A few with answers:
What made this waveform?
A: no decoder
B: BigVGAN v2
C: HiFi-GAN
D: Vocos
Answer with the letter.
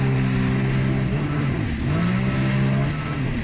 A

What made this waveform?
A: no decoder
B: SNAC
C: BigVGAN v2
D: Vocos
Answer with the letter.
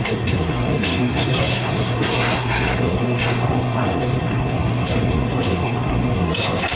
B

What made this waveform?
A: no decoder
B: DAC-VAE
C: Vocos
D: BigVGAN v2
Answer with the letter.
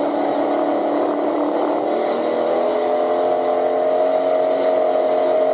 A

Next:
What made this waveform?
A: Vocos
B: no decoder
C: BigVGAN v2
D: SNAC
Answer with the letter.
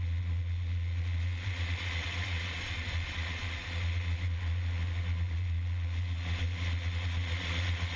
A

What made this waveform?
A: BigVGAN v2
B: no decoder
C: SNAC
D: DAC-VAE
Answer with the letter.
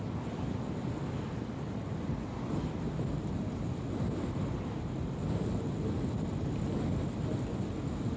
B